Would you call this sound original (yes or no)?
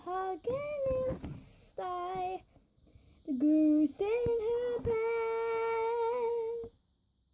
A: yes